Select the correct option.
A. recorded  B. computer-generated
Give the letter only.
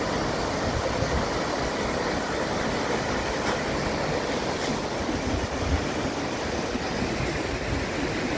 A